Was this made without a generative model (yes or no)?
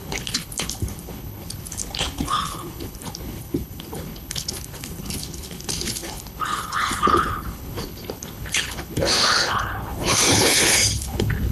no